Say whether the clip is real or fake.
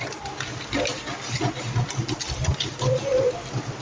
real